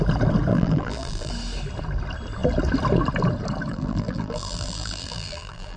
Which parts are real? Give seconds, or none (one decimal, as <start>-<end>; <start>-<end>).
0.0-0.5; 1.3-3.7